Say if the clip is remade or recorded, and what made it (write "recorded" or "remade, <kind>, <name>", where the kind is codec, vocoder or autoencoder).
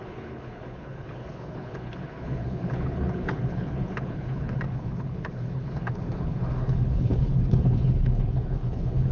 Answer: remade, codec, HILCodec